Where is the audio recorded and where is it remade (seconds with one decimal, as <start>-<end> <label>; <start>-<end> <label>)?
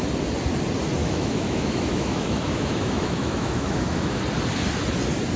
0.0-1.0 recorded; 1.0-4.2 remade; 4.2-5.4 recorded